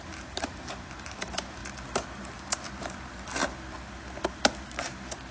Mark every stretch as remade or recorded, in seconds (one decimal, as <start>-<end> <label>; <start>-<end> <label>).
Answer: 0.0-1.6 remade; 1.6-2.2 recorded; 2.2-3.4 remade; 3.4-4.7 recorded; 4.7-5.3 remade